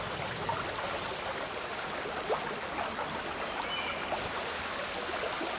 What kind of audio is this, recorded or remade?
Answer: recorded